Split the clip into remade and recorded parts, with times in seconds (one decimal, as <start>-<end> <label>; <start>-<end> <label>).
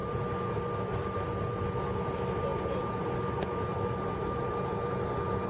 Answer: 0.0-5.5 recorded